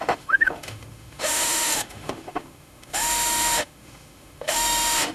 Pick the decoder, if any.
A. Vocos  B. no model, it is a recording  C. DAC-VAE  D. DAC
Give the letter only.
C